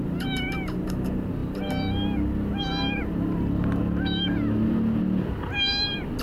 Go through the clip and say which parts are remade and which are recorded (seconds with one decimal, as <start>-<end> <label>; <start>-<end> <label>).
0.0-6.2 recorded

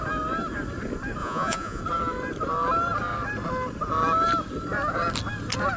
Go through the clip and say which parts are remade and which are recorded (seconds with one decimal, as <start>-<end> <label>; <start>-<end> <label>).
0.0-1.2 recorded; 1.2-1.8 remade; 1.8-5.8 recorded

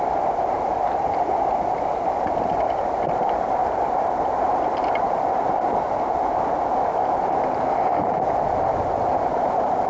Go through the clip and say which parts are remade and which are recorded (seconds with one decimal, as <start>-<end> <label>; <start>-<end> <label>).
0.0-9.9 recorded

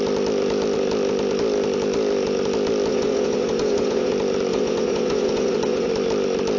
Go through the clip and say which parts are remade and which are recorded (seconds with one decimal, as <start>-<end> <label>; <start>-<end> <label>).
0.0-2.9 recorded; 2.9-4.1 remade; 4.1-4.5 recorded; 4.5-5.9 remade; 5.9-6.6 recorded

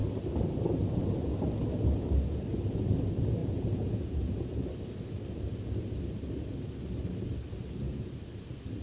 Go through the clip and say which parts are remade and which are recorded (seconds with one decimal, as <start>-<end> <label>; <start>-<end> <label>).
0.0-3.4 recorded; 3.4-4.6 remade; 4.6-8.8 recorded